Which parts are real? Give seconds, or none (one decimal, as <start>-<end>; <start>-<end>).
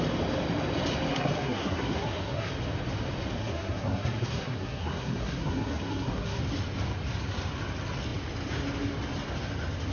0.0-1.1; 2.5-3.4; 6.4-9.9